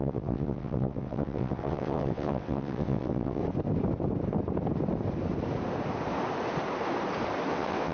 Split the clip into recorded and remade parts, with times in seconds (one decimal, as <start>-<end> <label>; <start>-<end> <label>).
0.0-3.4 remade; 3.4-7.5 recorded; 7.5-7.9 remade

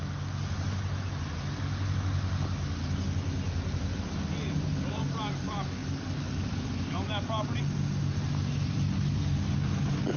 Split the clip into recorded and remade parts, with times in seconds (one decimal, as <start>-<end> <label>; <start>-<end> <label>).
0.0-10.2 recorded

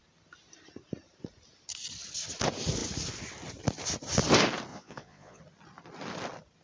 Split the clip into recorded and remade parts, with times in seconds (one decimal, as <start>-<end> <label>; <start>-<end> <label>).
0.0-4.7 recorded; 4.7-5.4 remade; 5.4-6.6 recorded

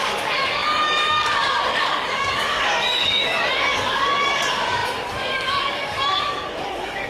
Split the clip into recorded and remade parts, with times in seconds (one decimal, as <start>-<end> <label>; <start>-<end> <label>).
0.0-7.1 remade

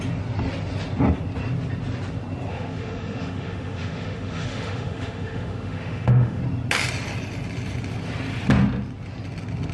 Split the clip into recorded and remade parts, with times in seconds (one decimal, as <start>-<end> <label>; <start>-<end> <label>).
0.0-2.5 recorded; 2.5-6.4 remade; 6.4-9.7 recorded